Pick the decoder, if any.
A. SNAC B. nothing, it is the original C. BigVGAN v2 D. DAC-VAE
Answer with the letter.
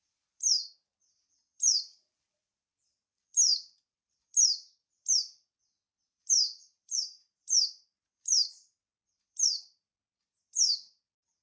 C